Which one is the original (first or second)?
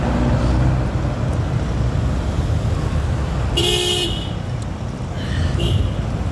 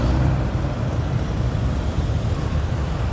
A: first